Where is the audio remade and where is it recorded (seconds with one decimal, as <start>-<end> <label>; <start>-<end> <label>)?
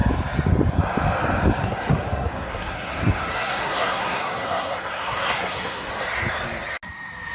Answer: 0.0-1.6 recorded; 1.6-5.9 remade; 5.9-7.3 recorded